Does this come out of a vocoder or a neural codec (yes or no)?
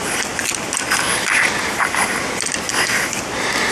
no